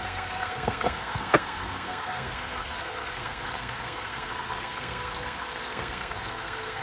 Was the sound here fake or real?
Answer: fake